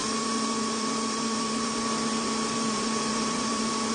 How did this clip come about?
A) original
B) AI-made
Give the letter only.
B